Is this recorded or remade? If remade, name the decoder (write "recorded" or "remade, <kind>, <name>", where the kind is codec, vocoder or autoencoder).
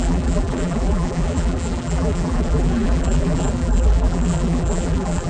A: remade, vocoder, BigVGAN v2